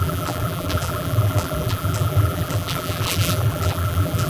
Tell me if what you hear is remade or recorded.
remade